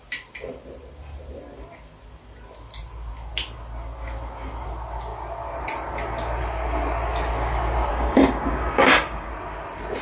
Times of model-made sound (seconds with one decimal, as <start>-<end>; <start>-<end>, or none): 7.9-9.3